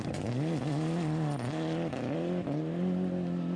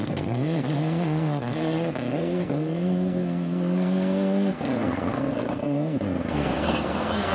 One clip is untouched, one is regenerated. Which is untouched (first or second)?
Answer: first